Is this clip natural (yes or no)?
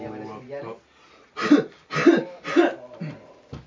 yes